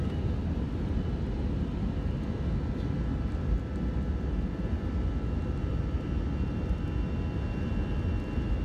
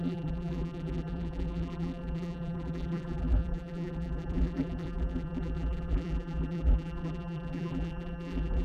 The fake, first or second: second